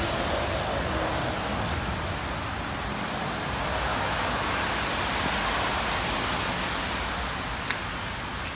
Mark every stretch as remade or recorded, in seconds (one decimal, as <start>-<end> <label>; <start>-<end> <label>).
0.0-3.9 recorded; 3.9-4.6 remade; 4.6-8.6 recorded